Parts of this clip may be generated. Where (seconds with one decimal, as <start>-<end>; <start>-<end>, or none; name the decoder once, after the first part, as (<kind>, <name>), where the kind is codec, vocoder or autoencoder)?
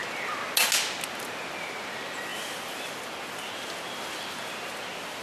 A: none